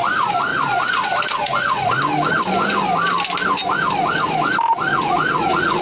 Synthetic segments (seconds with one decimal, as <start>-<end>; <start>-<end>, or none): 0.5-2.0; 4.9-5.8